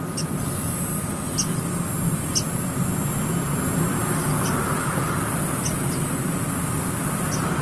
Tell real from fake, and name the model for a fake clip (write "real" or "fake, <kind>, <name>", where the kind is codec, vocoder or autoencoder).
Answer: real